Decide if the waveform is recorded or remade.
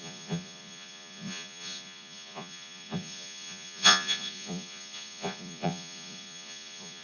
remade